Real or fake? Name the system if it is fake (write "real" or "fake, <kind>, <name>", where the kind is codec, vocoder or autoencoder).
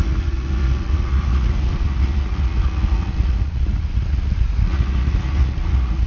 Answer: fake, vocoder, Vocos